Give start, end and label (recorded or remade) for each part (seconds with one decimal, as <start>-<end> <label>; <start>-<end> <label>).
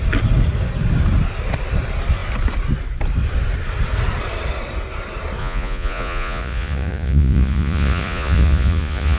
0.0-5.4 recorded; 5.4-9.2 remade